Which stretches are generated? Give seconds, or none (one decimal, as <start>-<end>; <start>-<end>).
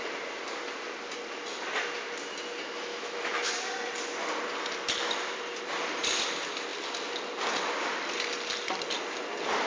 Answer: 2.9-3.5